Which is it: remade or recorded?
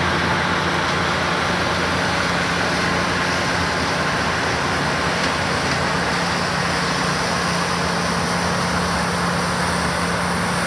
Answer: recorded